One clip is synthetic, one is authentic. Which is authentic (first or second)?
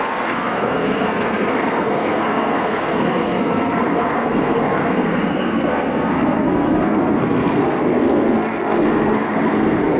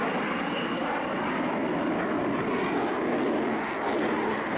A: second